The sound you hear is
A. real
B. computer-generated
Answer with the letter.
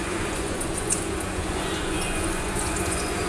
B